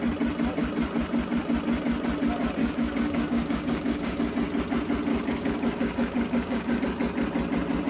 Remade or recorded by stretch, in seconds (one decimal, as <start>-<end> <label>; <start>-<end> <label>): 0.0-2.6 recorded; 2.6-4.2 remade; 4.2-5.1 recorded; 5.1-6.8 remade; 6.8-7.9 recorded